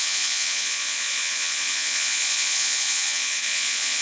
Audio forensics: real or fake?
fake